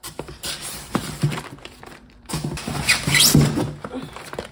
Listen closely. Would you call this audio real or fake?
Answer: fake